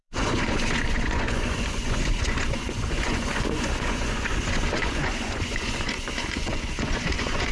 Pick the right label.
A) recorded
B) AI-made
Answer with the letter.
B